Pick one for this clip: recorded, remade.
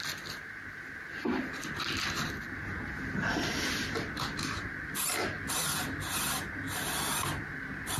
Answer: recorded